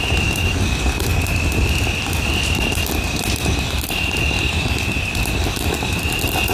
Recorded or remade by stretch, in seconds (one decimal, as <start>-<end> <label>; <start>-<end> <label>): 0.0-6.5 recorded